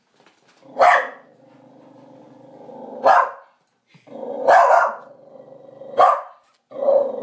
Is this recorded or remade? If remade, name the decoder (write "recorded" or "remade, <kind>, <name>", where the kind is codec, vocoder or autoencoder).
recorded